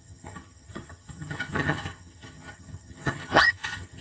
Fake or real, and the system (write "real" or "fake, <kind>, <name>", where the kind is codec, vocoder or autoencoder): fake, vocoder, HiFi-GAN